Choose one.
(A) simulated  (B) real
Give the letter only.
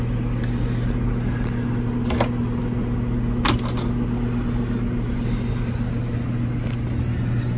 B